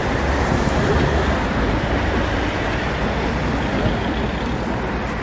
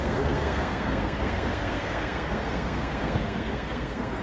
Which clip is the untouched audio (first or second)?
first